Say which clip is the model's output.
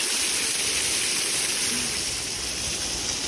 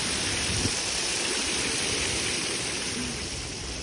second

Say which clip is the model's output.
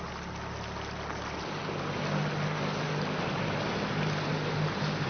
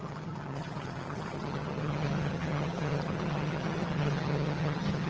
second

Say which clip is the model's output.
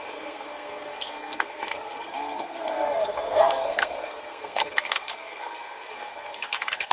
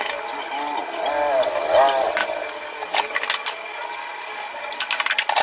first